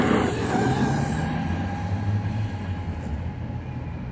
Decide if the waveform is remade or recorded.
recorded